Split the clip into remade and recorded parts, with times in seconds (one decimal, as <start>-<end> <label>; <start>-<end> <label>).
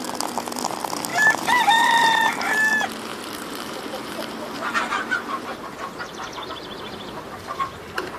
0.0-1.1 recorded; 1.1-2.7 remade; 2.7-3.1 recorded; 3.1-8.2 remade